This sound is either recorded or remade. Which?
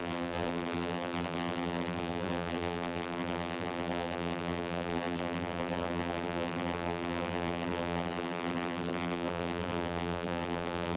remade